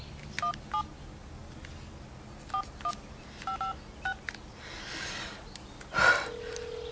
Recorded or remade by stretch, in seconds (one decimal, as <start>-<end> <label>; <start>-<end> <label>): 0.0-6.9 recorded